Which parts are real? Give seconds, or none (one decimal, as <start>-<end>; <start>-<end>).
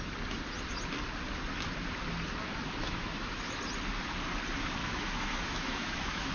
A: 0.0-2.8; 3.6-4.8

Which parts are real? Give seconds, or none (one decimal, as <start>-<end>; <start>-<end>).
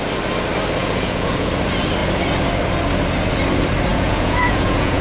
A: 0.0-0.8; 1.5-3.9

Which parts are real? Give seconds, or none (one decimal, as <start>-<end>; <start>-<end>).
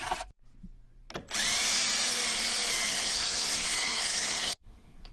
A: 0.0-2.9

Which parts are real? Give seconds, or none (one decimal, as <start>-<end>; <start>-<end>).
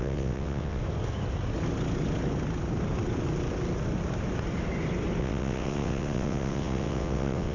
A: 0.8-5.2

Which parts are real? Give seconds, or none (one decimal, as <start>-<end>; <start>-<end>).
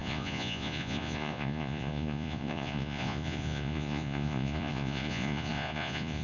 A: none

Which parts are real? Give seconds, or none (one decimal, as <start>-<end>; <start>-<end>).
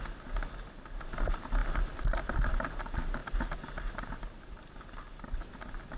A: 0.0-6.0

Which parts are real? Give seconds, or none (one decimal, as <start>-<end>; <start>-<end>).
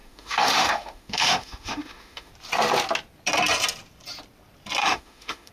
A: 2.3-4.8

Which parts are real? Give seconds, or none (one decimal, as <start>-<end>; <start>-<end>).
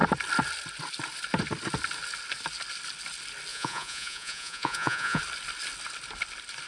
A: 0.0-3.5; 5.2-6.7